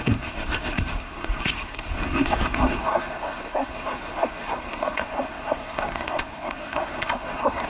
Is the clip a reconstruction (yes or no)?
yes